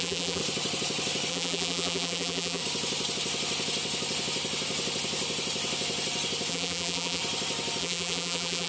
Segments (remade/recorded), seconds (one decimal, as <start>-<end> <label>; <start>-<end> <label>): 0.0-0.4 remade; 0.4-1.3 recorded; 1.3-2.6 remade; 2.6-6.5 recorded; 6.5-7.2 remade; 7.2-7.8 recorded; 7.8-8.7 remade